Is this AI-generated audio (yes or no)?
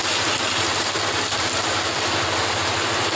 no